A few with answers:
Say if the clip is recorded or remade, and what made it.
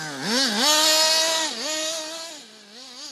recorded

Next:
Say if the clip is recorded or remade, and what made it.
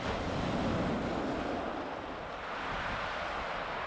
recorded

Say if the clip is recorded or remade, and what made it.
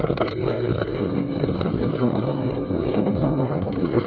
remade, codec, SNAC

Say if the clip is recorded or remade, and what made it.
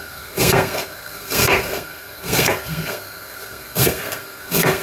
remade, codec, SNAC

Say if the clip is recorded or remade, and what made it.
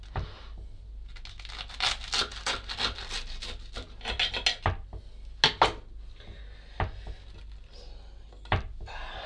recorded